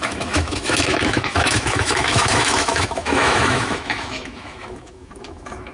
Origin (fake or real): fake